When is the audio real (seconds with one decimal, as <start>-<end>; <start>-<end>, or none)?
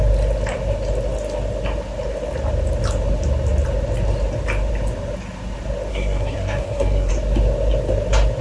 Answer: 0.0-5.9; 7.1-8.4